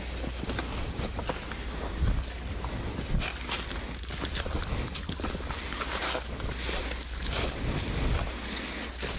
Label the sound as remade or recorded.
recorded